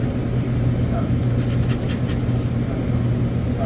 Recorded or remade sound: recorded